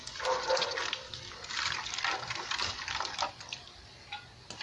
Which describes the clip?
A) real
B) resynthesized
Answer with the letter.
A